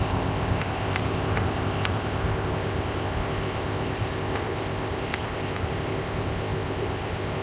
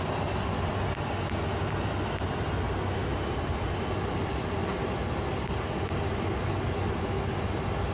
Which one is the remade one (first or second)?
first